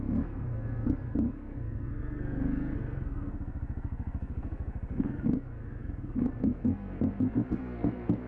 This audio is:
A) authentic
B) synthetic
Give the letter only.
B